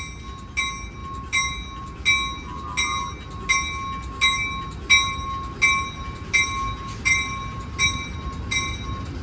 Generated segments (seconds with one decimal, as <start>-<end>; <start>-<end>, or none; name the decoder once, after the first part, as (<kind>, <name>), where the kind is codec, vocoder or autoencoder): none